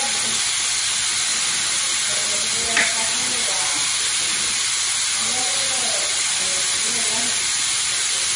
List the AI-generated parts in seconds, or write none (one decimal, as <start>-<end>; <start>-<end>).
none